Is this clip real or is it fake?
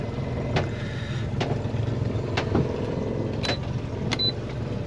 real